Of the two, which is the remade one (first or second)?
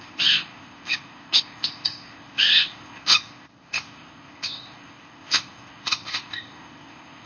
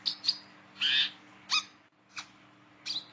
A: first